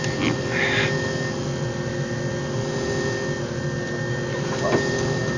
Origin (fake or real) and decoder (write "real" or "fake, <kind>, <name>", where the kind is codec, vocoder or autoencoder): real